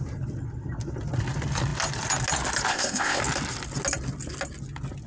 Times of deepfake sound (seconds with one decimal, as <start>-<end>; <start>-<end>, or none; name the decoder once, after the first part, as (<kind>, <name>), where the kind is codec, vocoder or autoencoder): 2.7-3.2 (codec, ZipCodec)